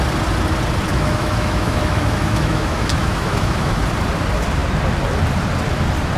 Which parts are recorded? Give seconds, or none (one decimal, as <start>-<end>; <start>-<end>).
0.0-0.9; 3.8-6.2